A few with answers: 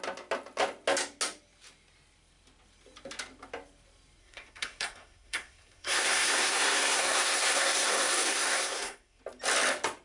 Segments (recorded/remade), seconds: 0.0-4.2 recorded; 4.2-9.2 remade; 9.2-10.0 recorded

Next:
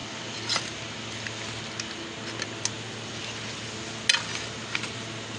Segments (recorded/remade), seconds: 0.0-5.4 recorded

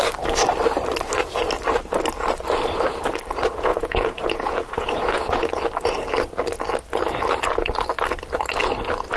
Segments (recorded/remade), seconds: 0.0-3.7 recorded; 3.7-5.5 remade; 5.5-9.2 recorded

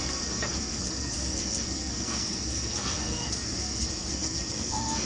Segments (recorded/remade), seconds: 0.0-5.1 remade

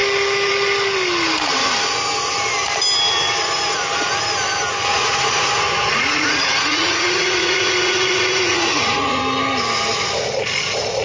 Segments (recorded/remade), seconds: 0.0-4.9 recorded; 4.9-9.2 remade; 9.2-11.0 recorded